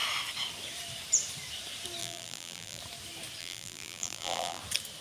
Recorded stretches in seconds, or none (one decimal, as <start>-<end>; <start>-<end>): 0.0-2.0; 2.8-3.4; 4.6-5.0